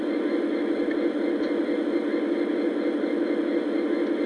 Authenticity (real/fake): real